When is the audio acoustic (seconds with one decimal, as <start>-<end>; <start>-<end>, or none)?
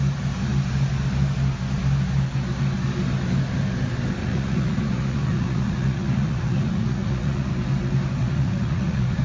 0.0-4.2; 7.5-8.2